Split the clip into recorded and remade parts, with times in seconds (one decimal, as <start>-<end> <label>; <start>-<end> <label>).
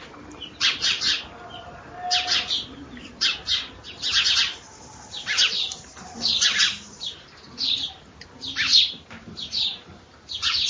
0.0-1.1 remade; 1.1-2.3 recorded; 2.3-3.8 remade; 3.8-4.4 recorded; 4.4-10.7 remade